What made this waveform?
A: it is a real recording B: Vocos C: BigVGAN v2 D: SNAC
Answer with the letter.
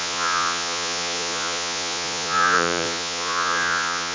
B